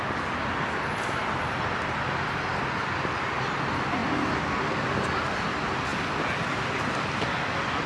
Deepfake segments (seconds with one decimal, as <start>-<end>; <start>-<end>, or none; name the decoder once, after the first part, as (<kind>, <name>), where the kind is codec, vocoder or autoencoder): none